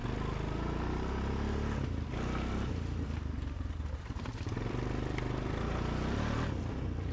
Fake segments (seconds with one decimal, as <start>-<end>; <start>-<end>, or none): 3.9-7.1